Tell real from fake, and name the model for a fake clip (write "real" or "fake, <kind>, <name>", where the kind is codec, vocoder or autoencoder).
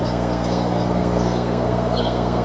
fake, codec, SNAC